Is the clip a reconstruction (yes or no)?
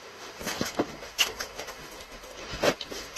yes